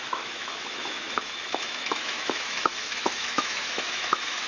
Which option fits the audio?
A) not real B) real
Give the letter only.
A